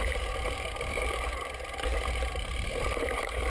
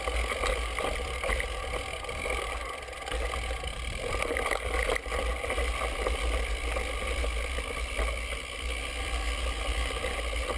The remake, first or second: first